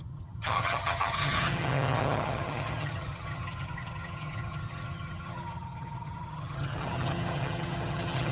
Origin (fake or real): fake